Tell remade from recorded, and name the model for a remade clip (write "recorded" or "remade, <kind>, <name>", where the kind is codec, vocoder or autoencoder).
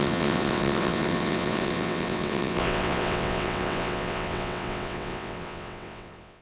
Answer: remade, vocoder, WaveNeXt